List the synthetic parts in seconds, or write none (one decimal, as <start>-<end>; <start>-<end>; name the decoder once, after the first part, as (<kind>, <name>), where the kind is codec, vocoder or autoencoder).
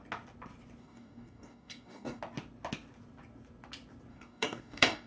0.8-2.2 (codec, DAC); 4.1-5.1